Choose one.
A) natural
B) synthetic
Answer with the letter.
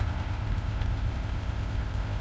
B